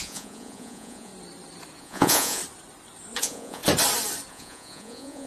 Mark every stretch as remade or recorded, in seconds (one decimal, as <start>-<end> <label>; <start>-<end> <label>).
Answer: 0.0-1.1 remade; 1.1-1.8 recorded; 1.8-2.4 remade; 2.4-3.2 recorded; 3.2-3.6 remade; 3.6-4.3 recorded; 4.3-5.3 remade